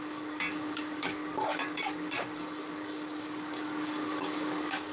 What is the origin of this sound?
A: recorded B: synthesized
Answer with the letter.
B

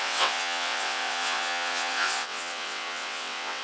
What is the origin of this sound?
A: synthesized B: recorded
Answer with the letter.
A